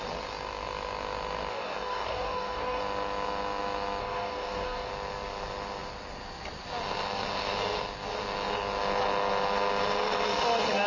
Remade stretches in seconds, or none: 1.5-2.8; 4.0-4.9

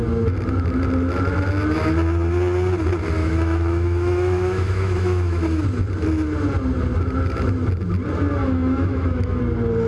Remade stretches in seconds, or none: 3.2-5.6; 8.4-9.4

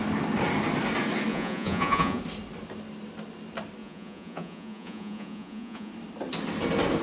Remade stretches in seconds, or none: 1.3-2.2; 3.8-5.9

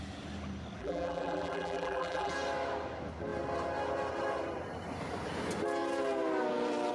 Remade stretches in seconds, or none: 0.8-2.3

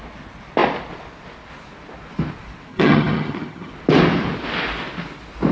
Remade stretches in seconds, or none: 2.7-3.7

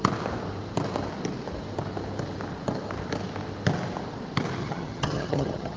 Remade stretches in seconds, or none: 4.6-5.8

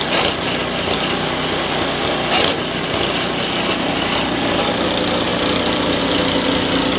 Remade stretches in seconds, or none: none

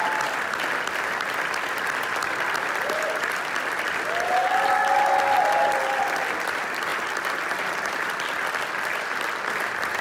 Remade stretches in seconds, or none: none